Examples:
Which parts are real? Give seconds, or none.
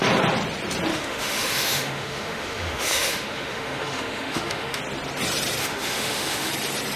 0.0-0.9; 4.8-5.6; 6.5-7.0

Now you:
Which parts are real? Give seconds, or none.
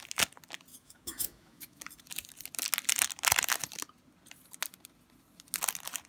0.0-0.7; 1.8-6.1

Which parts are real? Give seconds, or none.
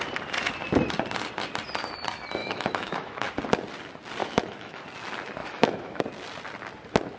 0.0-2.4; 3.3-4.2; 4.8-5.4; 6.0-7.2